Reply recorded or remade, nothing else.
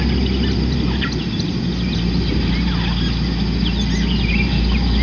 recorded